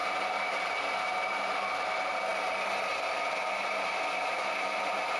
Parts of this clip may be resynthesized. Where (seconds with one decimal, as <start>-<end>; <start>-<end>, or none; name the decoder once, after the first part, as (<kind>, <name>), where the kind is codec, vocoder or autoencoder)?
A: none